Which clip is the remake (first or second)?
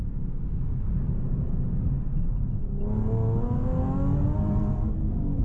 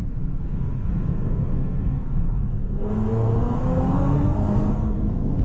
second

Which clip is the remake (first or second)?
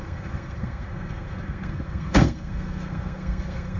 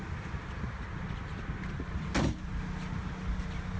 first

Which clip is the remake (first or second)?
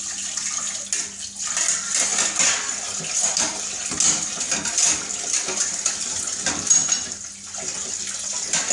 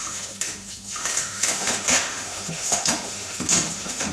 second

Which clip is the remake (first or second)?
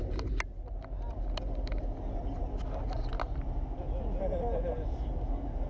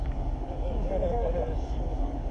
second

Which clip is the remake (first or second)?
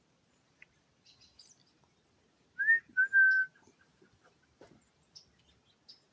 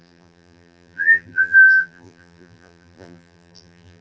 second